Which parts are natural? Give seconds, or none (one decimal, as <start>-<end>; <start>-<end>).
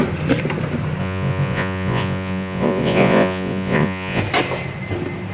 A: 0.0-1.0; 4.2-5.3